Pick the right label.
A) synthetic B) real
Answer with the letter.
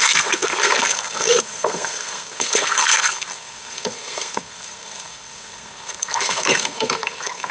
A